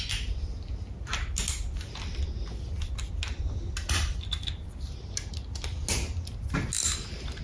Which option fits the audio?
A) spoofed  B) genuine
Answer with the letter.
B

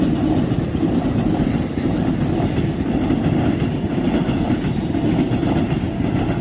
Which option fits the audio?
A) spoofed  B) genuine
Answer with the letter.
B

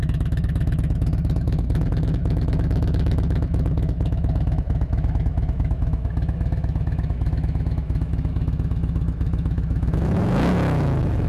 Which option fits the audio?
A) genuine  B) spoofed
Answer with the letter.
B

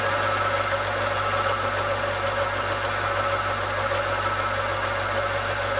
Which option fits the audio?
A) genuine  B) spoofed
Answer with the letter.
A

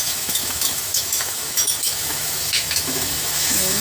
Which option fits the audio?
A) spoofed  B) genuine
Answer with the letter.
A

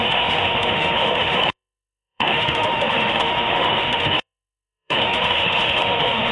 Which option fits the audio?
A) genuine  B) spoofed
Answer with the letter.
B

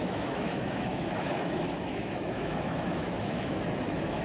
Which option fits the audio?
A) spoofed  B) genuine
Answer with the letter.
A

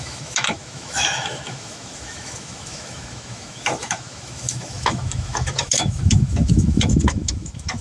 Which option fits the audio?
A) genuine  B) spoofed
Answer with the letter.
B